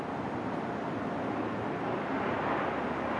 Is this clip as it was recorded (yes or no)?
yes